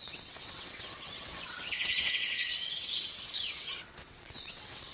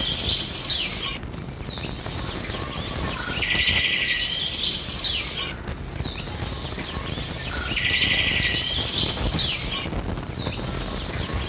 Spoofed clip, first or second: first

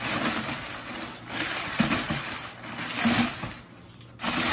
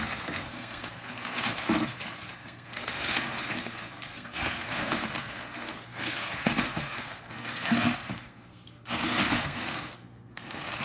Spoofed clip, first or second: second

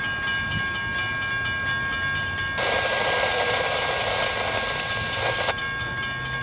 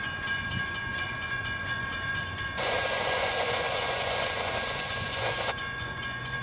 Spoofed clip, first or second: second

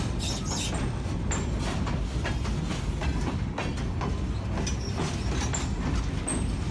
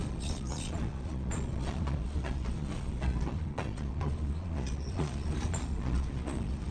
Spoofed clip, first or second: second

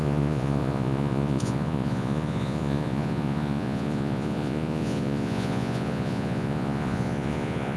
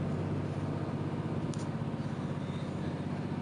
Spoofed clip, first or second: first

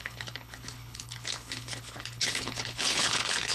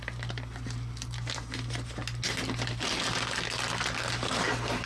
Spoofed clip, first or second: first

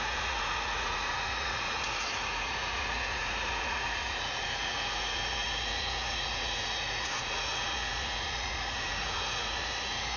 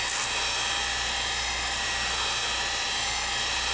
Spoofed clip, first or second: first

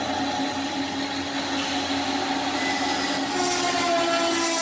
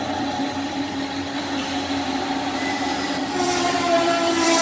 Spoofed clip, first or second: second